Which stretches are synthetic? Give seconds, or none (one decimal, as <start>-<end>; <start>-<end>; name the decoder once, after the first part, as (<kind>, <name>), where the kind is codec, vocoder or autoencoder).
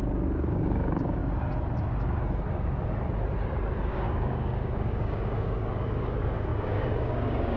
0.0-1.2 (codec, DAC); 3.9-7.6